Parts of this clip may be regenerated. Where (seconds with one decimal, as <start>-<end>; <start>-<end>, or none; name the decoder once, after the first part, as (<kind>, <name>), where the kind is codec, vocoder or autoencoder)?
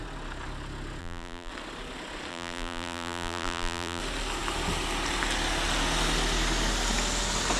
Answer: 1.0-1.5 (vocoder, BigVGAN v2); 2.3-4.0